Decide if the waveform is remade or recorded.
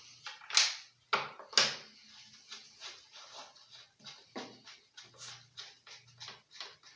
recorded